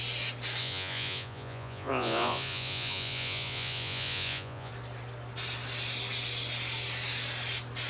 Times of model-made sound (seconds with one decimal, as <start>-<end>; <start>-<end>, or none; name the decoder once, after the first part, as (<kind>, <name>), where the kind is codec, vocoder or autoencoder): 0.6-4.7 (vocoder, Vocos)